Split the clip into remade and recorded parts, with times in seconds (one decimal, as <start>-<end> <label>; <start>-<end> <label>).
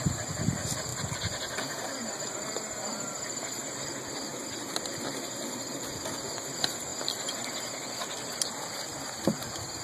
0.0-9.8 recorded